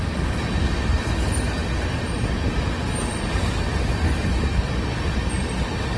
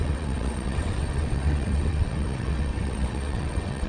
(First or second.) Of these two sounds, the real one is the first